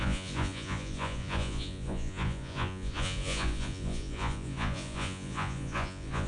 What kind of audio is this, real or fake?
fake